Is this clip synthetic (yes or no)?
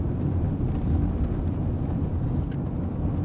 no